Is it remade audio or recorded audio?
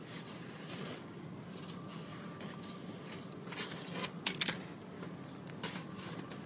recorded